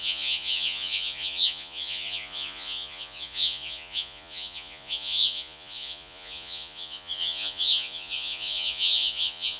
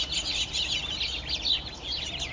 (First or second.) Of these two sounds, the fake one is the first